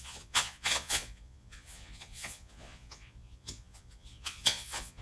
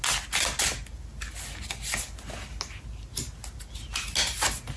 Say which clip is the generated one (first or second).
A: first